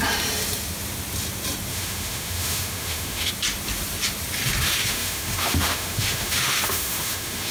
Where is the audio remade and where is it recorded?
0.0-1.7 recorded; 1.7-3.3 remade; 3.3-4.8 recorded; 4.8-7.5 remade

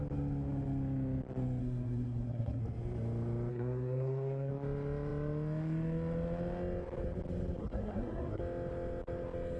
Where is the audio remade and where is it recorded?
0.0-1.6 recorded; 1.6-2.6 remade; 2.6-3.5 recorded; 3.5-4.5 remade; 4.5-7.6 recorded; 7.6-8.4 remade; 8.4-9.6 recorded